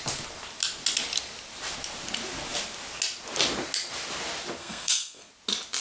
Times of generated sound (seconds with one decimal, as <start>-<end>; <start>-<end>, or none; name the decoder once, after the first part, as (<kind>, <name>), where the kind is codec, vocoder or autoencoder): 4.6-5.3 (codec, SNAC)